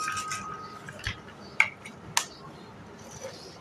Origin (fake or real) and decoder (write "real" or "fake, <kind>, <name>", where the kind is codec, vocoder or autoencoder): real